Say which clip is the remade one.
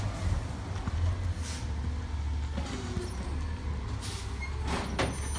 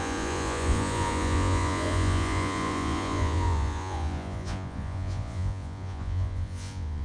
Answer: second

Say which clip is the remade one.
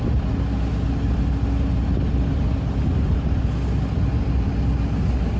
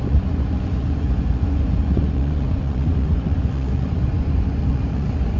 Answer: second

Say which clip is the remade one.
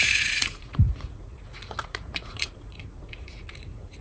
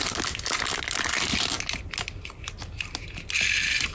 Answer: first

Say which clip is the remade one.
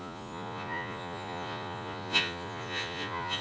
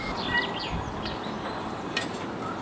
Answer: first